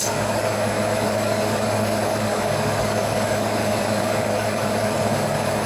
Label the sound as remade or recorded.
remade